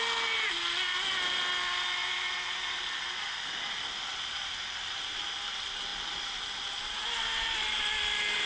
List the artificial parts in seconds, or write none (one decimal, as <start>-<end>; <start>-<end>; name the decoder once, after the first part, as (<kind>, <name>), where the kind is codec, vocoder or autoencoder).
none